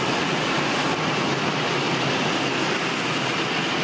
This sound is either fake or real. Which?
real